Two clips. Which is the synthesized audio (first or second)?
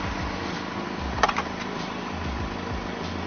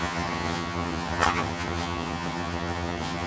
second